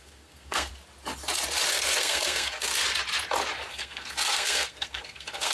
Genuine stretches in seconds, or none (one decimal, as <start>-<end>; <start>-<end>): 0.7-1.7; 2.7-3.7